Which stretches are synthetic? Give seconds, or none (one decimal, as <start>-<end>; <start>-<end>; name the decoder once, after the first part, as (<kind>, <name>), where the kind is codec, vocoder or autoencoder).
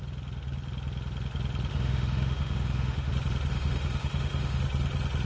1.7-3.1 (autoencoder, DAC-VAE); 3.5-4.6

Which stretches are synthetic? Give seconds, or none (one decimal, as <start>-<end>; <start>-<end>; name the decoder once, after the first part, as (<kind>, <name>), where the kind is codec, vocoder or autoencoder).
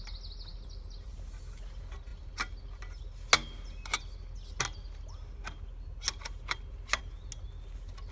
none